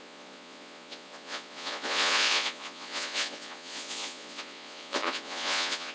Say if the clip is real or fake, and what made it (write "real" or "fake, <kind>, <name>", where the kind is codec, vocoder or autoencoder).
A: fake, vocoder, Vocos